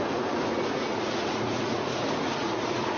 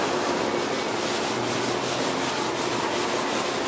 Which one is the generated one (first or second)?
first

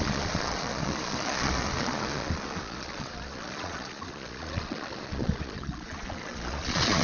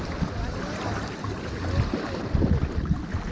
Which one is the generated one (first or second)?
first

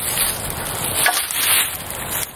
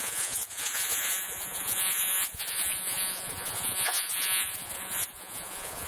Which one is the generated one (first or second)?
second